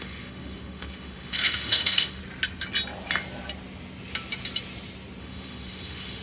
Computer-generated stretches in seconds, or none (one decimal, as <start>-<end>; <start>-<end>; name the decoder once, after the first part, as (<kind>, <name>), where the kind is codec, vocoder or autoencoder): 0.0-2.2 (autoencoder, DAC-VAE); 5.2-6.2